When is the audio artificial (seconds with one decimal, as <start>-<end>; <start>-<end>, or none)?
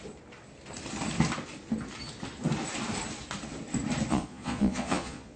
4.1-5.4